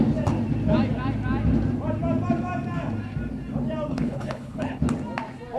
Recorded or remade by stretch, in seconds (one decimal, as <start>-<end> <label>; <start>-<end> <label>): 0.0-3.9 recorded; 3.9-4.8 remade; 4.8-5.6 recorded